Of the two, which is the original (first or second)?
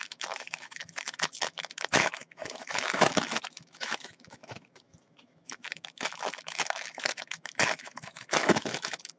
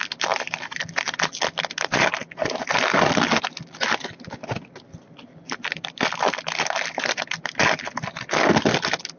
second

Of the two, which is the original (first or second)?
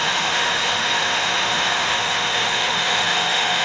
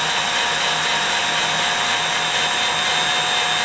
second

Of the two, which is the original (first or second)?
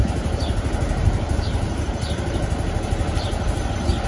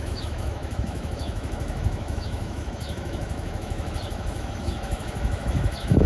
first